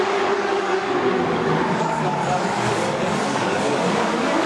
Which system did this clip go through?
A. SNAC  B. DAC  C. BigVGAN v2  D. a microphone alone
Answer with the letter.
B